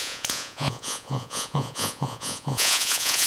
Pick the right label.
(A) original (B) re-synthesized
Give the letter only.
B